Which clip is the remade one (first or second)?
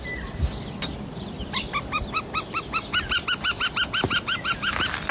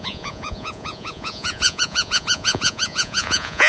second